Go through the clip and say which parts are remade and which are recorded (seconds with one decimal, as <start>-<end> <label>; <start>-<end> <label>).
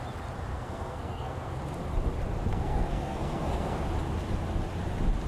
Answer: 0.0-0.5 recorded; 0.5-1.6 remade; 1.6-2.5 recorded; 2.5-3.8 remade; 3.8-5.3 recorded